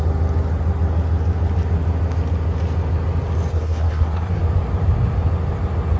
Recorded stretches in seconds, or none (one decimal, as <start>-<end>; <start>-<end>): 0.0-3.5; 4.4-6.0